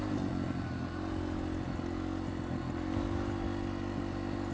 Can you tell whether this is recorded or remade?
recorded